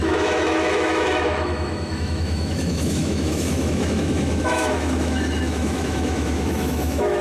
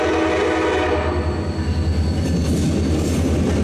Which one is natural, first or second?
second